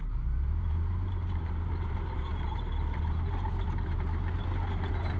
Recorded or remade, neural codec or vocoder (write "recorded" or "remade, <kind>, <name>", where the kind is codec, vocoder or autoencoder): remade, vocoder, BigVGAN v2